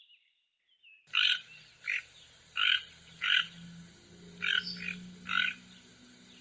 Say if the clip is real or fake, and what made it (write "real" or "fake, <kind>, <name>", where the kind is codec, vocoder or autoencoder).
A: real